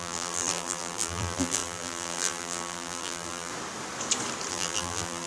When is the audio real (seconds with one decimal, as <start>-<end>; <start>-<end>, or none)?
3.5-4.5